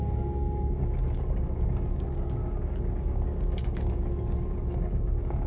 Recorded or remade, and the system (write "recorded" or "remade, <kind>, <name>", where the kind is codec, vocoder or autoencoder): remade, codec, DAC